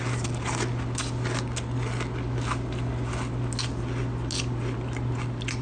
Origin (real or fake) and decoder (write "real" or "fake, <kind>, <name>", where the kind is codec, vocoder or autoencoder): real